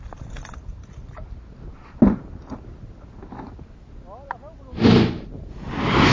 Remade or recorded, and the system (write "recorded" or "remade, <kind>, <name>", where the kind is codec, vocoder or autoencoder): recorded